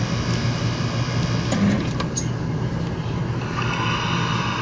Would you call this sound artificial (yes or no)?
no